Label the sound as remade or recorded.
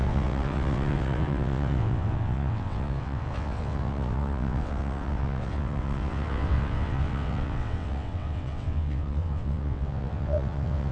remade